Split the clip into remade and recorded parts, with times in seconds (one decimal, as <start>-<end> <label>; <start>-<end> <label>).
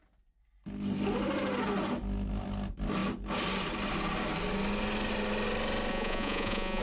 0.0-5.9 recorded; 5.9-6.8 remade